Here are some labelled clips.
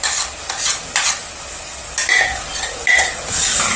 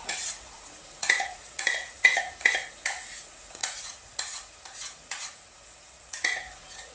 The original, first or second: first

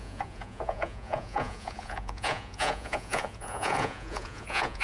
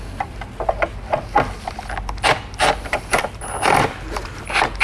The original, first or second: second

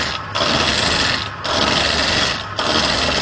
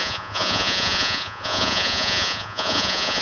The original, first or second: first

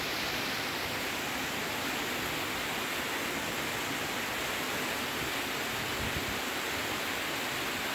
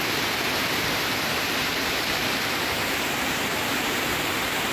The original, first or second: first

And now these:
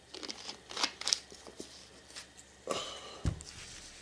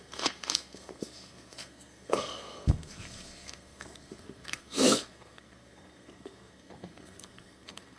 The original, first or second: first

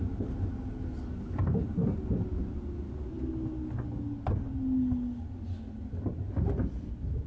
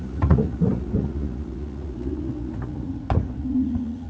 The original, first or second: first